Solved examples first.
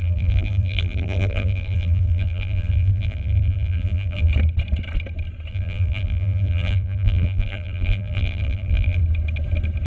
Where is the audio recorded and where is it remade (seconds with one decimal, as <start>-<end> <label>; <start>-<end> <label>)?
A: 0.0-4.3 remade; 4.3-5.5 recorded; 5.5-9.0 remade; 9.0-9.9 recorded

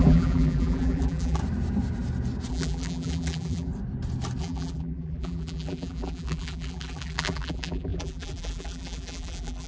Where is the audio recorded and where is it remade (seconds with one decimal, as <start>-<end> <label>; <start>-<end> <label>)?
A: 0.0-1.4 remade; 1.4-2.5 recorded; 2.5-3.7 remade; 3.7-4.4 recorded; 4.4-9.7 remade

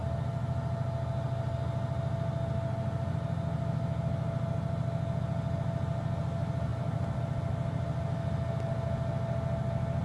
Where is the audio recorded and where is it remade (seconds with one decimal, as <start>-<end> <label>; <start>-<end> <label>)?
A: 0.0-6.7 recorded; 6.7-7.2 remade; 7.2-10.0 recorded

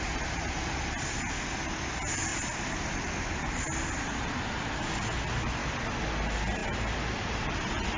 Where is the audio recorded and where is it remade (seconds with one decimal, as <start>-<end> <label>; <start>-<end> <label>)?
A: 0.0-2.3 recorded; 2.3-4.8 remade; 4.8-5.6 recorded; 5.6-6.1 remade; 6.1-8.0 recorded

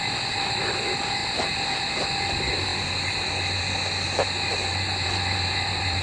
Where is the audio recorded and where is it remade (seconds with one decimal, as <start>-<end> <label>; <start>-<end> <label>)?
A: 0.0-1.2 recorded; 1.2-1.8 remade; 1.8-4.5 recorded; 4.5-6.0 remade

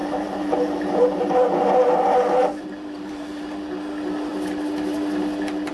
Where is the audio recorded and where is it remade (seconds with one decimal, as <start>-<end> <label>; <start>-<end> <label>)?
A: 0.0-3.4 remade; 3.4-5.7 recorded